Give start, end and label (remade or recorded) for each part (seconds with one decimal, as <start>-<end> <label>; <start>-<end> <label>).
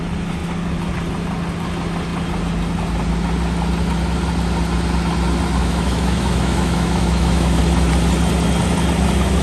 0.0-5.6 recorded; 5.6-7.6 remade; 7.6-9.4 recorded